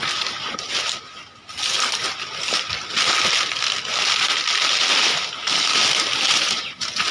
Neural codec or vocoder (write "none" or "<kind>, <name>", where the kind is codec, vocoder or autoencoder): none